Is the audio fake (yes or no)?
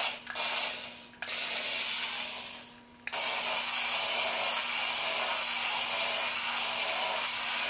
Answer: no